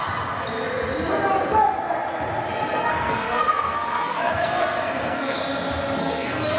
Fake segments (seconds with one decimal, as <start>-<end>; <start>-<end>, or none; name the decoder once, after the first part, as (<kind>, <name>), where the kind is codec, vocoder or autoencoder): 2.9-5.4 (codec, SNAC); 6.0-6.6